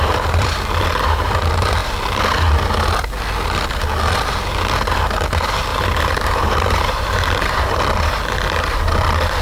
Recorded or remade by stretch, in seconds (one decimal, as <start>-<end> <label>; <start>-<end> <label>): 0.0-5.7 recorded; 5.7-7.8 remade; 7.8-9.4 recorded